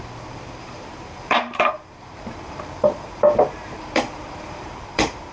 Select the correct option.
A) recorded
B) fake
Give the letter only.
B